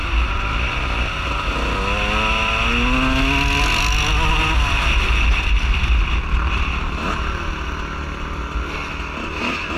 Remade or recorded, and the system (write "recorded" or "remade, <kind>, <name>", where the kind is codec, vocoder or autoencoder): recorded